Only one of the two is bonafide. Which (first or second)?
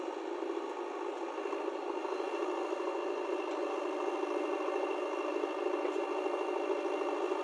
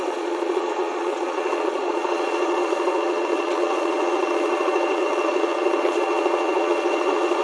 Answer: first